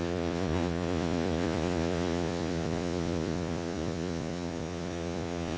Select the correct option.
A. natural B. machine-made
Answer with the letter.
B